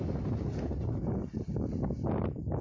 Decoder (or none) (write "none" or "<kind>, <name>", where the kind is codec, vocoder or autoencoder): none